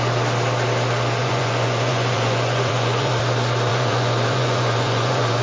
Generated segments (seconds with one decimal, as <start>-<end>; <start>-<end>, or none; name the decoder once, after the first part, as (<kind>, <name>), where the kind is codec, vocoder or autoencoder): 1.2-3.1 (vocoder, Vocos); 3.7-5.4

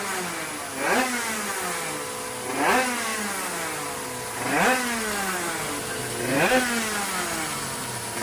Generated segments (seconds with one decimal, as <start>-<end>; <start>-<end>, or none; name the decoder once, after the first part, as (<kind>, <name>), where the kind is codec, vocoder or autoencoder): none

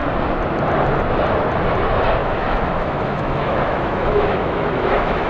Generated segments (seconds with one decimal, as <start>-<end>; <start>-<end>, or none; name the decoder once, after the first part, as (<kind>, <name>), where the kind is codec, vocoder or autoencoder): 2.2-5.3 (autoencoder, DAC-VAE)

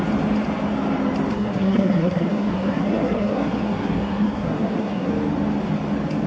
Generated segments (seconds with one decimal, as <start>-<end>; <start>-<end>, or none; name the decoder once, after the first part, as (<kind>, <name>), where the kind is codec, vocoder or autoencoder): 1.3-5.1 (codec, SNAC)

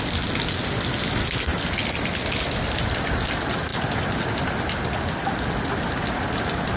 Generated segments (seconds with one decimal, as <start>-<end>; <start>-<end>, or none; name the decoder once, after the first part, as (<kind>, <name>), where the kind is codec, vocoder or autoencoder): none